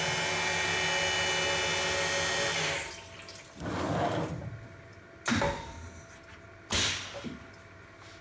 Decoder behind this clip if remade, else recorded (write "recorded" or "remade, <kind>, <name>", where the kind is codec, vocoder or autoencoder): recorded